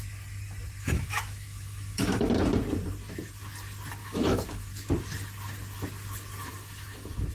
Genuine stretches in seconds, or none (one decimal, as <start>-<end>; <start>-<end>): 0.0-0.8; 2.3-4.0; 4.7-6.4